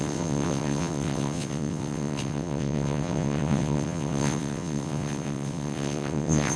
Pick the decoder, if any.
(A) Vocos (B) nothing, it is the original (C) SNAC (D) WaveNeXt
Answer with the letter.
D